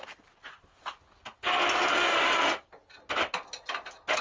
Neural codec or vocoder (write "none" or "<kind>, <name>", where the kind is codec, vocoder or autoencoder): none